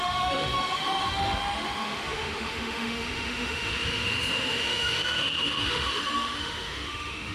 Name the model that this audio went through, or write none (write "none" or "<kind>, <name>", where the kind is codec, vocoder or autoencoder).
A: autoencoder, DAC-VAE